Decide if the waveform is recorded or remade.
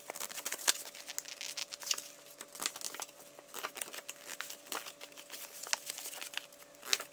recorded